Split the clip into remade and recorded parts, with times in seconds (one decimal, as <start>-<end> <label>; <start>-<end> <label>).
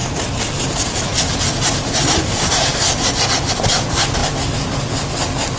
0.0-5.6 recorded